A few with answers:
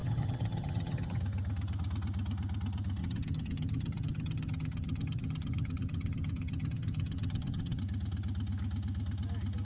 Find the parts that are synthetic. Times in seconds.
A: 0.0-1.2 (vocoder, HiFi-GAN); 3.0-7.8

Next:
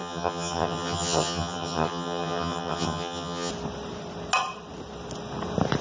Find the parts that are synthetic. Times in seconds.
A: 0.0-3.5 (vocoder, HiFi-GAN)

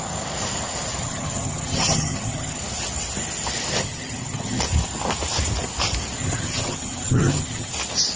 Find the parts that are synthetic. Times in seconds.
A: 1.0-2.6 (vocoder, HiFi-GAN); 3.8-4.6; 6.2-7.7

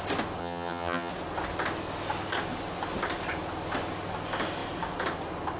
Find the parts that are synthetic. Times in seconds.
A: 0.4-1.1 (vocoder, HiFi-GAN)

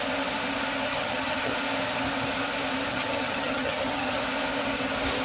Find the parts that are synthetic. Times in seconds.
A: 0.9-1.5 (vocoder, HiFi-GAN); 2.9-4.2

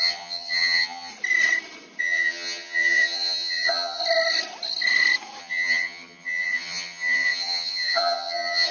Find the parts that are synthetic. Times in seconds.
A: 0.0-1.1 (vocoder, HiFi-GAN); 2.0-4.0; 5.4-8.7